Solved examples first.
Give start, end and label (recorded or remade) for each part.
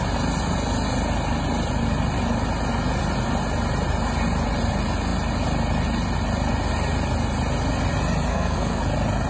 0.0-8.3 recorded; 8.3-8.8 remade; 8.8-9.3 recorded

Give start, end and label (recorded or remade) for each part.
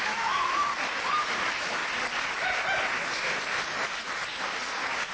0.0-0.7 remade; 0.7-1.2 recorded; 1.2-1.8 remade; 1.8-5.1 recorded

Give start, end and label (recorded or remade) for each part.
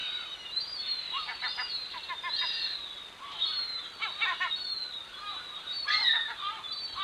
0.0-2.1 remade; 2.1-5.0 recorded; 5.0-6.4 remade; 6.4-7.0 recorded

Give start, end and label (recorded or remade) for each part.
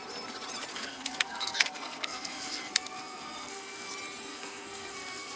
0.0-0.7 recorded; 0.7-3.9 remade; 3.9-4.3 recorded; 4.3-5.4 remade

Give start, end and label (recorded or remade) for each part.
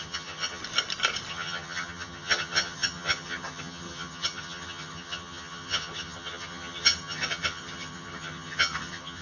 0.0-0.6 remade; 0.6-1.3 recorded; 1.3-9.2 remade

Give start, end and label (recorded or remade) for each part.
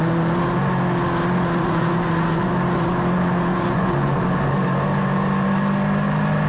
0.0-1.6 recorded; 1.6-2.5 remade; 2.5-3.5 recorded; 3.5-4.2 remade; 4.2-6.5 recorded